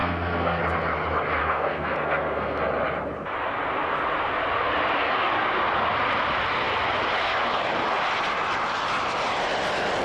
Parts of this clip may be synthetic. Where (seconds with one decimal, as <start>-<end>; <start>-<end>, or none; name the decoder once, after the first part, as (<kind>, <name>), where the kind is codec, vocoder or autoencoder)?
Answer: 0.0-0.6 (codec, SNAC); 1.4-2.6